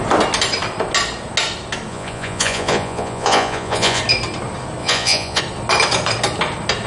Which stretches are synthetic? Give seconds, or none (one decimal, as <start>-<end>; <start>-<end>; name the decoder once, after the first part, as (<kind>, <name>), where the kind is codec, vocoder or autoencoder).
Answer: 1.9-4.0 (vocoder, Vocos); 4.8-5.4

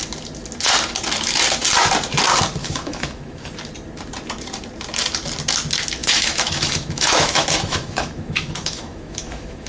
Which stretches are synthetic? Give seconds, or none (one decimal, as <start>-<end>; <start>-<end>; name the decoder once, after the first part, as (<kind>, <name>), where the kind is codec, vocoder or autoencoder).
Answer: 2.6-3.5 (autoencoder, DAC-VAE); 6.0-9.7

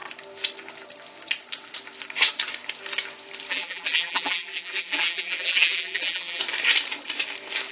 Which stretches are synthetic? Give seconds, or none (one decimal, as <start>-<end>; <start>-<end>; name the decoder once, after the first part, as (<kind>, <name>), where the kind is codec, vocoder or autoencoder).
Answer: 3.5-6.4 (vocoder, BigVGAN v2)

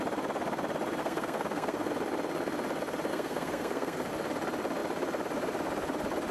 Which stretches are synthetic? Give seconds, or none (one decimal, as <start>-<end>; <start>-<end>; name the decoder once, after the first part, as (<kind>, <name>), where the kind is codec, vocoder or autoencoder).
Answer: 1.0-1.9 (codec, SNAC); 3.1-4.1

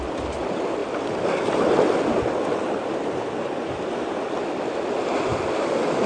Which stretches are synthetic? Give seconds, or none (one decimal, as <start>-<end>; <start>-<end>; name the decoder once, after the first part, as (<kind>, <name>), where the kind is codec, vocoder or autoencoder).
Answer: none

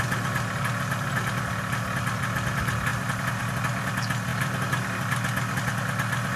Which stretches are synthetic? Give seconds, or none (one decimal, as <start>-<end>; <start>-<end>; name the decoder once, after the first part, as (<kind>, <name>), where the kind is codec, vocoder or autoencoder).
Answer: 4.3-4.8 (vocoder, BigVGAN v2)

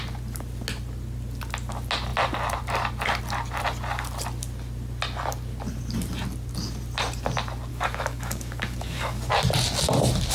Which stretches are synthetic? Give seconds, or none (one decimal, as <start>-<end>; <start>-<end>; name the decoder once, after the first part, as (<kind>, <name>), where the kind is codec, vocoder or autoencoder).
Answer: 7.7-9.3 (codec, DAC)